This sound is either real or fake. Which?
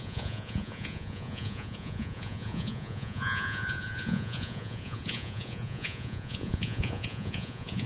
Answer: fake